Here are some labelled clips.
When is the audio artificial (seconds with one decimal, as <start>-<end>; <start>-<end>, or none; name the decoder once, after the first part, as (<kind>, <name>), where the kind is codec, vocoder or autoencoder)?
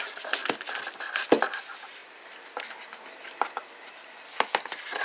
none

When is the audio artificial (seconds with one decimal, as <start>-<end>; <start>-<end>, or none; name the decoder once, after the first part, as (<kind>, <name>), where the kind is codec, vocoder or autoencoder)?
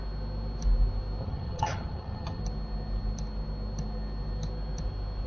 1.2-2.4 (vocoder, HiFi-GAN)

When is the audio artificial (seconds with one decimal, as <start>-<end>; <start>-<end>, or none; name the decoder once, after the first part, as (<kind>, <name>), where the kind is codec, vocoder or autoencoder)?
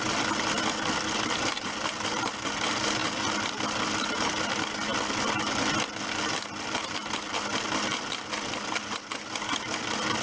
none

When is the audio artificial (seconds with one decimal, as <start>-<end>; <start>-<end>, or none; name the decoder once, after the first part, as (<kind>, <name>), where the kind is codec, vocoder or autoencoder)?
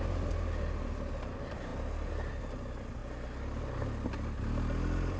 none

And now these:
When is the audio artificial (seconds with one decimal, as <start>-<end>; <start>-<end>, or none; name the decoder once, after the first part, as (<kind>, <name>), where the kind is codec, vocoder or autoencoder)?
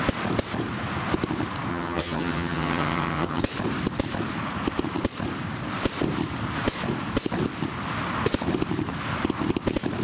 1.7-3.4 (vocoder, HiFi-GAN)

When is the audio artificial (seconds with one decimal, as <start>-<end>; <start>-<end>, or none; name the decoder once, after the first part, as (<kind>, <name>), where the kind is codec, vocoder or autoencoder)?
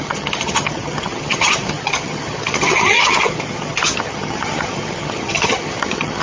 0.0-6.2 (vocoder, HiFi-GAN)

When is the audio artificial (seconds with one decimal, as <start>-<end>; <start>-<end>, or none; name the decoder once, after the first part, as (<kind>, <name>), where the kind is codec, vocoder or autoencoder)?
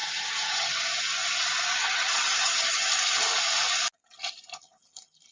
0.0-0.8 (vocoder, HiFi-GAN); 1.8-2.9